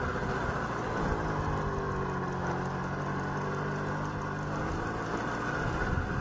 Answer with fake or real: real